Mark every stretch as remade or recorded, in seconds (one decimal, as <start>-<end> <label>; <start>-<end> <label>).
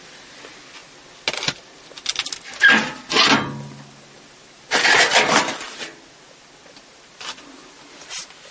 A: 0.0-8.5 recorded